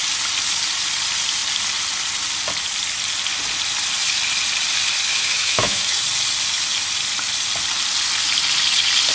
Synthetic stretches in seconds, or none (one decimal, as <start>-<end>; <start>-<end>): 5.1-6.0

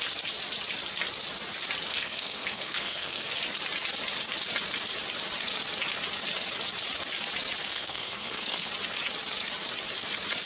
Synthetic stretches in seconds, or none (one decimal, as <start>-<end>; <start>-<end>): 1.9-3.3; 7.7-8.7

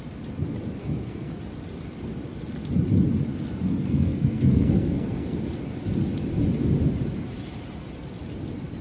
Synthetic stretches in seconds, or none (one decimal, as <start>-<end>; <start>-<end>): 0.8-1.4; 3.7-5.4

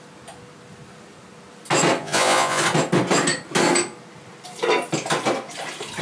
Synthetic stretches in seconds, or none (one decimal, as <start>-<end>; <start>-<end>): 2.0-2.6